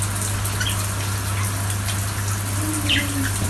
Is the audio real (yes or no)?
yes